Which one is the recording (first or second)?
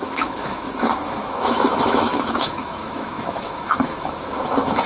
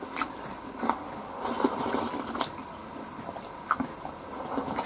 second